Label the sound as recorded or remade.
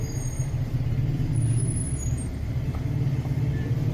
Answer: recorded